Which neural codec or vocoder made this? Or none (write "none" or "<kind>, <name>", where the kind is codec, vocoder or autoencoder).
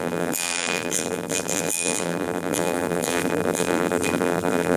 vocoder, BigVGAN v2